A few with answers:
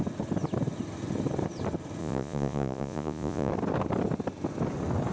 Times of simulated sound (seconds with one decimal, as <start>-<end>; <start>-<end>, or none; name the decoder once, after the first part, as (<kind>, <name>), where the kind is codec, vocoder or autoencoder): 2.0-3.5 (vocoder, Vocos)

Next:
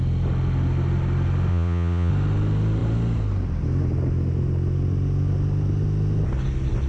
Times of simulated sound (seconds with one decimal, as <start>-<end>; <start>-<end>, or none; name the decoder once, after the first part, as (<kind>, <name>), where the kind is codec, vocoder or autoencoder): 1.5-2.1 (vocoder, Vocos)

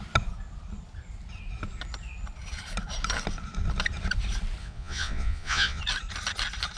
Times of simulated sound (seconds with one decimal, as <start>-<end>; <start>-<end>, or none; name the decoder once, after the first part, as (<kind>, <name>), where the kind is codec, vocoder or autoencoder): 4.6-5.8 (vocoder, Vocos)

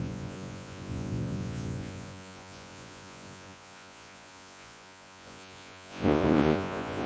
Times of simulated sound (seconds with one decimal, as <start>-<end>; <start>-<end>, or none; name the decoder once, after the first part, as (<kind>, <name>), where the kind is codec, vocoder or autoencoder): 0.0-7.1 (vocoder, Vocos)

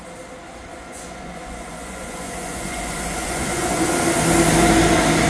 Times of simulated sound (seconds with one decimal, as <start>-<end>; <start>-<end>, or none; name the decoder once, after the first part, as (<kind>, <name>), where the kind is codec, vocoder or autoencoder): 0.7-3.9 (vocoder, Vocos)

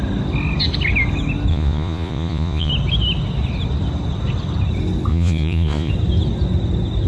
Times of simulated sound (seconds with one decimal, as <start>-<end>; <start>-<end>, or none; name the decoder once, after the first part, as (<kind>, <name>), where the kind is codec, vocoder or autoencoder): 1.5-2.7 (vocoder, Vocos); 5.1-5.9

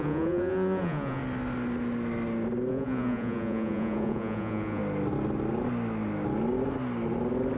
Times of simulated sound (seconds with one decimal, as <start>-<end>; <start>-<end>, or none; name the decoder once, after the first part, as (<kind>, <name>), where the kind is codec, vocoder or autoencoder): 0.0-1.2 (vocoder, Vocos); 2.7-4.8

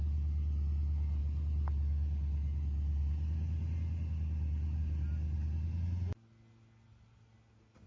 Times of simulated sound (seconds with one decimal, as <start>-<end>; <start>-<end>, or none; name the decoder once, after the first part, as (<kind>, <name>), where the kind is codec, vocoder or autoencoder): none